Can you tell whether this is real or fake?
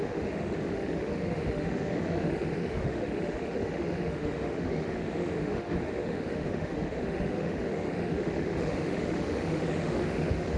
fake